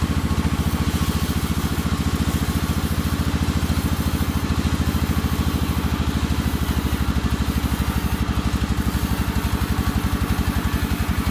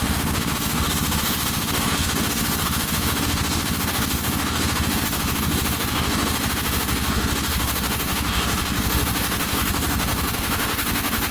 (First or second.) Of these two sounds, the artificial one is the second